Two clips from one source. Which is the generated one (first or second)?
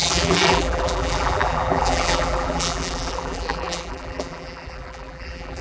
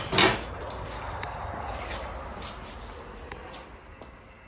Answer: first